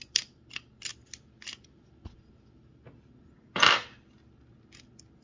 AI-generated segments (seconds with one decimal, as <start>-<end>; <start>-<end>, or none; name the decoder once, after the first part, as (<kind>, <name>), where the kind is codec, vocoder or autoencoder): none